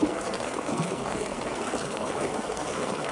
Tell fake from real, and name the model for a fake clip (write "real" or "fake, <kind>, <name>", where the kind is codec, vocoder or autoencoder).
fake, codec, SNAC